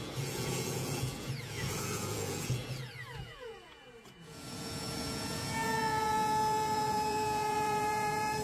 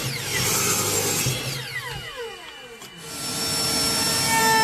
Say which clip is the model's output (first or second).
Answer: first